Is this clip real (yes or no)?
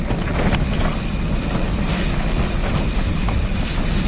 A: yes